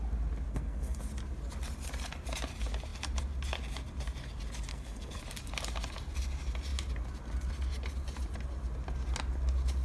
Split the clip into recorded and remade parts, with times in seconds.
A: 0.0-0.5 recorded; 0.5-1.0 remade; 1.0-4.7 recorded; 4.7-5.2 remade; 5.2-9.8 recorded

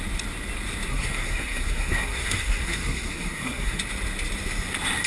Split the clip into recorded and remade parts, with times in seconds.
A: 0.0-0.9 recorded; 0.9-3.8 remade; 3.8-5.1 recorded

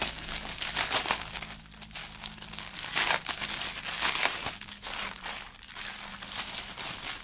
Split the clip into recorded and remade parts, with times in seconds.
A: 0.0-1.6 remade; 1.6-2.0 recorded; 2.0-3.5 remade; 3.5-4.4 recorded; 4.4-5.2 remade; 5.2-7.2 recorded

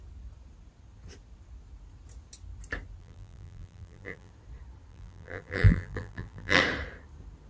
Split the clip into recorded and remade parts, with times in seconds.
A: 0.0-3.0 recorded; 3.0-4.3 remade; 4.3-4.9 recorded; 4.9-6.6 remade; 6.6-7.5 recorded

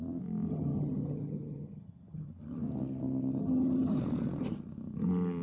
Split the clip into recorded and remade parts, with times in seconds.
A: 0.0-0.5 recorded; 0.5-2.3 remade; 2.3-3.4 recorded; 3.4-4.0 remade; 4.0-5.4 recorded

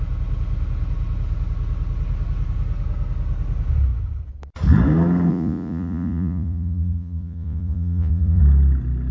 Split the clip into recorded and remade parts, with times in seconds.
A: 0.0-5.3 recorded; 5.3-8.4 remade; 8.4-9.1 recorded

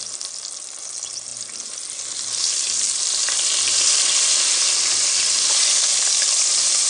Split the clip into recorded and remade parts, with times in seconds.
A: 0.0-6.9 recorded